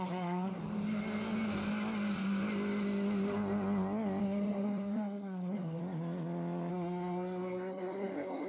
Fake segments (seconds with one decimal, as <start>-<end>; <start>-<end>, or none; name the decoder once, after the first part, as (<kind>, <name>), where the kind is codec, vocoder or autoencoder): 0.0-0.6 (codec, SNAC); 4.2-5.8; 6.7-8.5